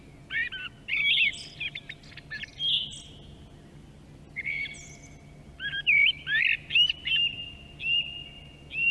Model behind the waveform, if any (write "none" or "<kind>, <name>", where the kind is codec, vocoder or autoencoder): none